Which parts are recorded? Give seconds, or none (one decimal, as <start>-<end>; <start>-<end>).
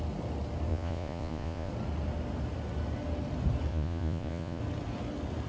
0.0-0.7; 1.7-3.7; 4.6-5.5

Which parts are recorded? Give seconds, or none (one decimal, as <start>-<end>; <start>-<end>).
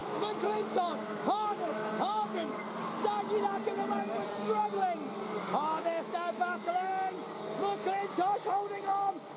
2.6-5.8; 6.9-9.4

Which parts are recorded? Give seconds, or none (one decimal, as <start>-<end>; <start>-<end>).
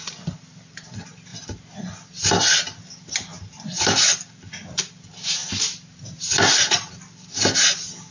0.0-8.1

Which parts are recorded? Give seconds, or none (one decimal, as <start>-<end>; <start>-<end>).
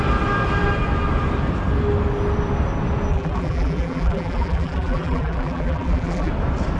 0.0-3.1; 6.3-6.8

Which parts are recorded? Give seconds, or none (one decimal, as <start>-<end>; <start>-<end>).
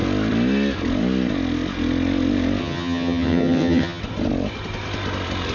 0.0-2.6; 4.0-5.5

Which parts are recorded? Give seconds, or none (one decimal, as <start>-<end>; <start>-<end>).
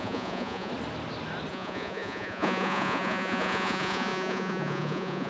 0.7-1.5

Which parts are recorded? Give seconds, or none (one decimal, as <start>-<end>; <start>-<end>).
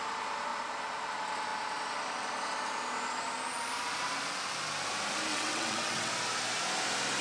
0.0-5.3; 6.1-7.2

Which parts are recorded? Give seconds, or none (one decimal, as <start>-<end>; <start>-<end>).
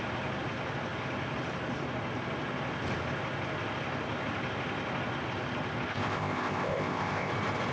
0.0-5.9; 7.3-7.7